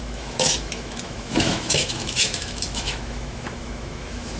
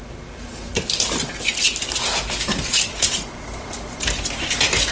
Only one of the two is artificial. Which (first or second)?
first